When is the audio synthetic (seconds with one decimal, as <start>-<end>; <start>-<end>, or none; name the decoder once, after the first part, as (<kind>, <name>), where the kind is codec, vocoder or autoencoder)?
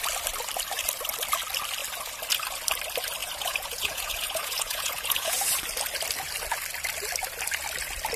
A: 3.2-5.4 (vocoder, Vocos)